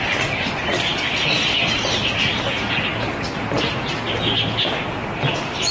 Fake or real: fake